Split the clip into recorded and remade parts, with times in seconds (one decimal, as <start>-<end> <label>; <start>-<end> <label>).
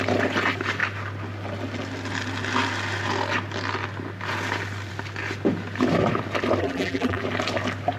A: 0.0-6.6 recorded; 6.6-7.2 remade; 7.2-8.0 recorded